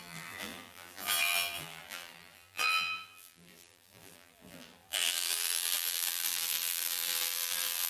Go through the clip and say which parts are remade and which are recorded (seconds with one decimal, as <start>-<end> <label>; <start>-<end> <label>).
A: 0.0-7.9 remade